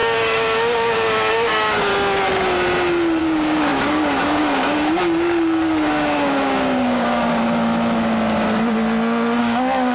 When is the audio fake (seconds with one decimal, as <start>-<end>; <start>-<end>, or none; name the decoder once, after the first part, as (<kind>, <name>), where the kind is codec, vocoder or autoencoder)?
0.0-1.9 (codec, DAC); 3.2-7.3; 9.4-9.9